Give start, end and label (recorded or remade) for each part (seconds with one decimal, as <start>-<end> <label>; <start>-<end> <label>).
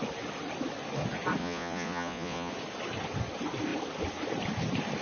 0.0-1.4 recorded; 1.4-2.5 remade; 2.5-5.0 recorded